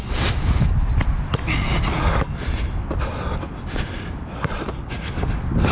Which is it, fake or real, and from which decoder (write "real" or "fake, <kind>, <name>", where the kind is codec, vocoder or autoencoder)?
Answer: real